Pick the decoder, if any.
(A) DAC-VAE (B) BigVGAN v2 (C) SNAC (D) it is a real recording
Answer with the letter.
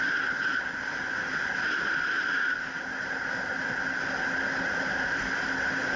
D